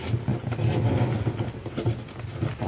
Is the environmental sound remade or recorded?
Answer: recorded